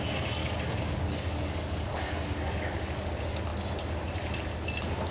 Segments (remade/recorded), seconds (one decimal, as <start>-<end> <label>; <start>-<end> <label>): 0.0-0.4 recorded; 0.4-3.1 remade; 3.1-5.1 recorded